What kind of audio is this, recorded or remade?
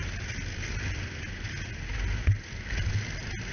recorded